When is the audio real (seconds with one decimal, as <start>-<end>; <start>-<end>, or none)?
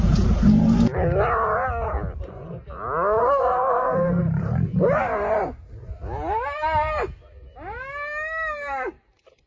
0.0-3.2; 4.2-9.5